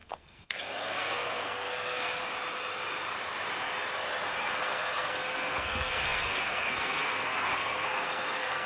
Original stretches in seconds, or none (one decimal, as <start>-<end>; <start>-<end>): 2.2-4.4